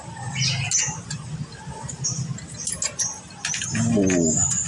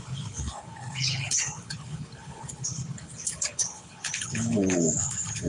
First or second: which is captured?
first